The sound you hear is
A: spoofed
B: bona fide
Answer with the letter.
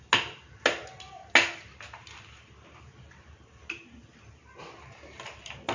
B